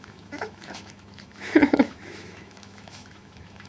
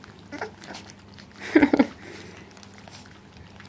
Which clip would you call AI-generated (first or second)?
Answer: first